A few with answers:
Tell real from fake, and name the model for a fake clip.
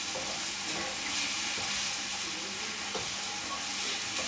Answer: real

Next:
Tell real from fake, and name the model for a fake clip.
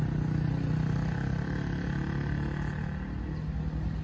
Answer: real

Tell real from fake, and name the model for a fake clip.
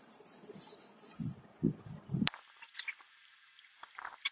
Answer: real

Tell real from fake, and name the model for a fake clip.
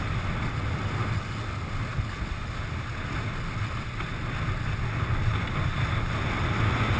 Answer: real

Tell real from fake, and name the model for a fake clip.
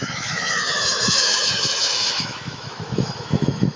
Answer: fake, autoencoder, DAC-VAE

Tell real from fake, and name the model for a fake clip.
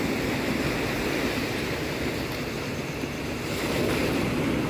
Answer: real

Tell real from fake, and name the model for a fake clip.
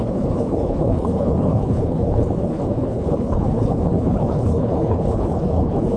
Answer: fake, codec, HILCodec